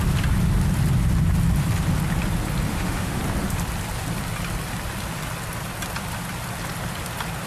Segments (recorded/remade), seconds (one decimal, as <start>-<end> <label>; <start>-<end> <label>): 0.0-2.7 recorded; 2.7-3.2 remade; 3.2-7.5 recorded